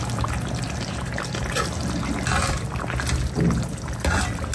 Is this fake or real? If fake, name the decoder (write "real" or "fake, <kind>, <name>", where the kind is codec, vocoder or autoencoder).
real